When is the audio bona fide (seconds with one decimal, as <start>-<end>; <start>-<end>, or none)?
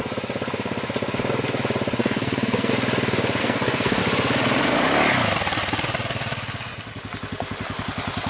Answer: 0.0-2.0; 2.7-3.4; 4.0-8.3